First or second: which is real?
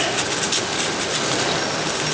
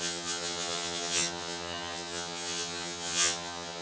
first